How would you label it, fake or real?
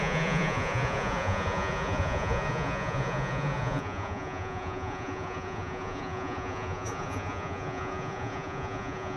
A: fake